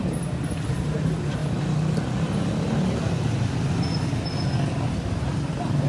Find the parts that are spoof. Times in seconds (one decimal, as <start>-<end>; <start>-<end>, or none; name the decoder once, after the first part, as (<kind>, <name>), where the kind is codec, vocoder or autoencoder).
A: 0.0-1.4 (vocoder, BigVGAN v2); 4.9-5.9